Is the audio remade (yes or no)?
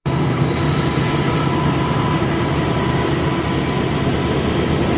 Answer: yes